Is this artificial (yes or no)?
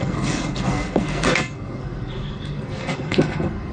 yes